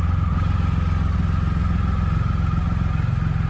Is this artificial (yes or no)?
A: no